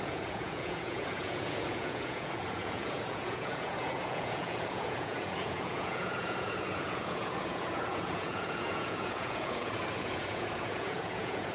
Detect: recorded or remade remade